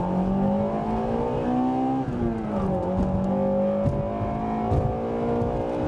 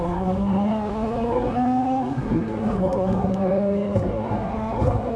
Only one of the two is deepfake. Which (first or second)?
second